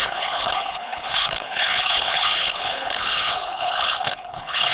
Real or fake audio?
fake